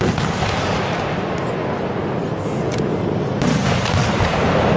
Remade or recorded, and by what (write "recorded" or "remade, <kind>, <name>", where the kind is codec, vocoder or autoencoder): recorded